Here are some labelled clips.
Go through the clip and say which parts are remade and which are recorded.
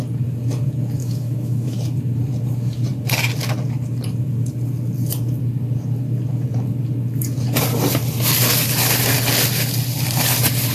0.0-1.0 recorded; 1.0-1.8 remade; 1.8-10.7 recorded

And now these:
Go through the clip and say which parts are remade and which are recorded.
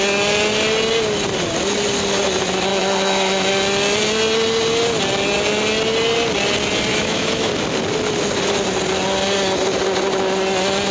0.0-2.7 recorded; 2.7-3.5 remade; 3.5-6.9 recorded; 6.9-7.5 remade; 7.5-10.9 recorded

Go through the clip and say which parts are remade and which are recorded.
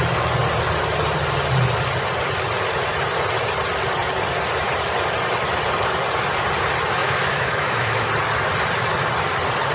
0.0-7.0 recorded; 7.0-8.1 remade; 8.1-9.7 recorded